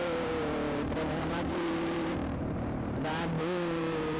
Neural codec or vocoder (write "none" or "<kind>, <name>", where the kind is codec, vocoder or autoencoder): vocoder, BigVGAN v2